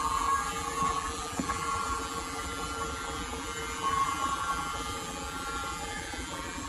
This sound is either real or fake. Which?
fake